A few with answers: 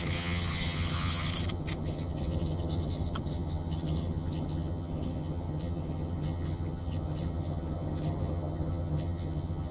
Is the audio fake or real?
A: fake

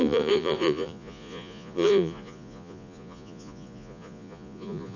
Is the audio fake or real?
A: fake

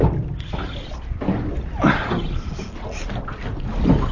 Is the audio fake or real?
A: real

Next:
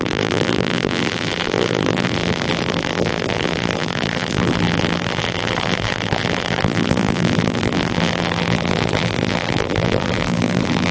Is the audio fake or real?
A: fake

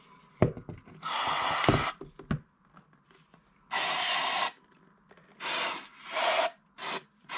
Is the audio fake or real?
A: real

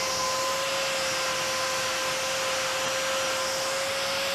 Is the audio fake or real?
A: real